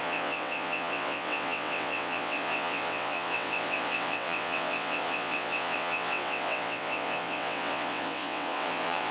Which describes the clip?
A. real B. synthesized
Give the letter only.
B